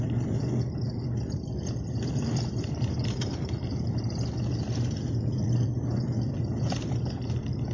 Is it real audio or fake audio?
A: fake